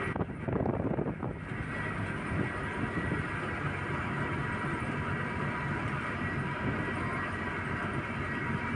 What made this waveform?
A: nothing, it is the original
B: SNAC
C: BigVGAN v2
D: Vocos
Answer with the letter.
A